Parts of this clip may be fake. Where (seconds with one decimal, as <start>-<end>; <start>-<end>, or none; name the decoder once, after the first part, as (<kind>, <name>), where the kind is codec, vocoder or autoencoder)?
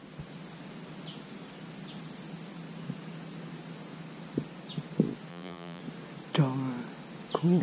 5.3-5.8 (vocoder, BigVGAN v2)